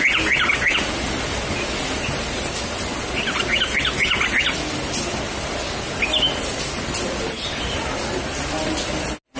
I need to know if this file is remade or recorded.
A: recorded